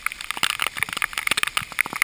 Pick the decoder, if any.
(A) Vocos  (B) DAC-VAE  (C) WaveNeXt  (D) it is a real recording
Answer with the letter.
D